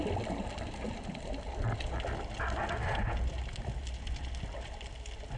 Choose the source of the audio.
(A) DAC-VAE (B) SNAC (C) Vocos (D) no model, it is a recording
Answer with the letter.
D